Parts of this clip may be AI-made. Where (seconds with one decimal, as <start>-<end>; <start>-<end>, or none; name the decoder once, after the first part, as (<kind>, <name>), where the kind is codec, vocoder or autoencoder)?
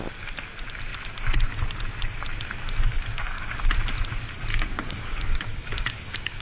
2.9-3.6 (codec, DAC); 4.5-6.4